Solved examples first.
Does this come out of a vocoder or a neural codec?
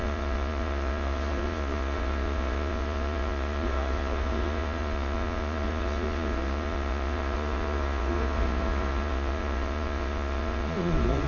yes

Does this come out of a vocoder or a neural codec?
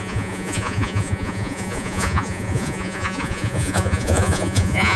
yes